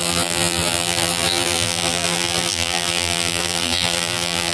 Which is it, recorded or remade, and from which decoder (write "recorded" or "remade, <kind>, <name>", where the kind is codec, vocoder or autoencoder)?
remade, vocoder, BigVGAN v2